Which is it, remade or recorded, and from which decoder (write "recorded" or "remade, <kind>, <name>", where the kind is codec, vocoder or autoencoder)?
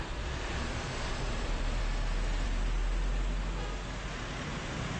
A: recorded